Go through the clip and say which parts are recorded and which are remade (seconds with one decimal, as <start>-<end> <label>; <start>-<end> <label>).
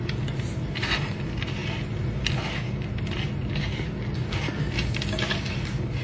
0.0-6.0 recorded